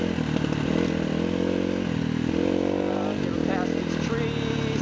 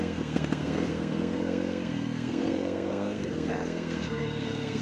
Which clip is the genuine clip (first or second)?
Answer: first